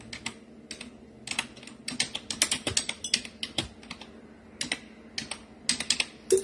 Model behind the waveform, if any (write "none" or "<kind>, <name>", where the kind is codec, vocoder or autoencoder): none